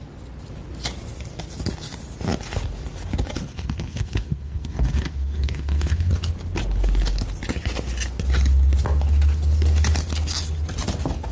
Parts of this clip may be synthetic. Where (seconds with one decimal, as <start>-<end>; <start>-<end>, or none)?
3.5-6.1